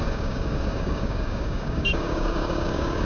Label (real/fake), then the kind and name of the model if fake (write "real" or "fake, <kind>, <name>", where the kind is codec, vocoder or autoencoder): fake, codec, DAC